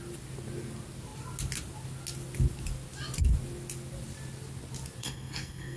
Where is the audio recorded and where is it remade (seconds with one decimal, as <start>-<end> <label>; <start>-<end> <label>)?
0.0-5.0 recorded; 5.0-5.8 remade